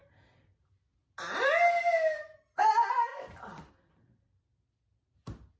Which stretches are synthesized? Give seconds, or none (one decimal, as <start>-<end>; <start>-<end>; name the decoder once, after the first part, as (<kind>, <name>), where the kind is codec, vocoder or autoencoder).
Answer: none